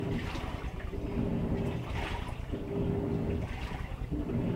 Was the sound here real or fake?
real